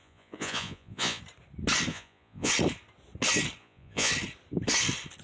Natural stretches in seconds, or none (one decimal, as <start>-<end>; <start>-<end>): 1.2-1.9; 2.5-3.6; 4.1-5.2